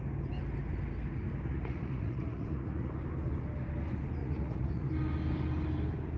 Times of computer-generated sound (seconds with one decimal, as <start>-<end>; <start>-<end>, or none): 1.5-2.9; 4.2-4.9